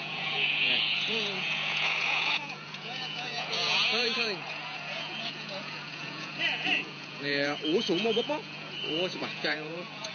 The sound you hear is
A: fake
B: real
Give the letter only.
A